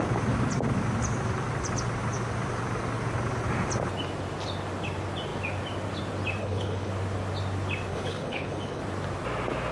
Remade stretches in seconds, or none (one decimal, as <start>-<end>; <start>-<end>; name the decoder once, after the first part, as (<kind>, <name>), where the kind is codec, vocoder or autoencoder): 6.4-6.9 (codec, HILCodec); 7.9-8.8